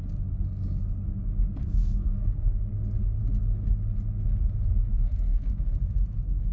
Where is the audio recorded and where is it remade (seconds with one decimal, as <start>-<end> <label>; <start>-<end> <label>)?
0.0-1.6 recorded; 1.6-2.7 remade; 2.7-4.9 recorded; 4.9-5.4 remade; 5.4-6.5 recorded